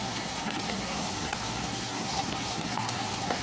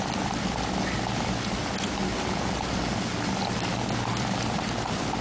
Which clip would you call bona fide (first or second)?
second